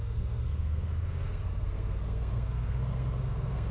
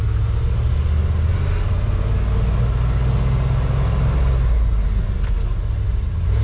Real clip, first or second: second